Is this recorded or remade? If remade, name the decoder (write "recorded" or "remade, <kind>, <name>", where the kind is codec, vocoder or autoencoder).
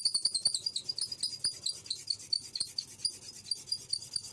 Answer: recorded